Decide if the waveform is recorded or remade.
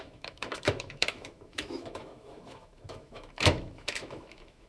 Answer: remade